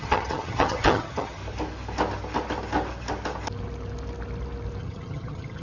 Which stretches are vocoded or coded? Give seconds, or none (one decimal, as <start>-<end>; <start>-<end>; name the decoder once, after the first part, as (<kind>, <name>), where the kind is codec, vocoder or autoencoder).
0.0-1.4 (vocoder, HiFi-GAN); 4.8-5.6